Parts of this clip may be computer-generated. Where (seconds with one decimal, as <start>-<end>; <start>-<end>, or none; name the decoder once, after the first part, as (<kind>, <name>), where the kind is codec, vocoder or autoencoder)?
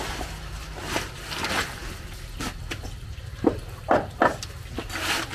none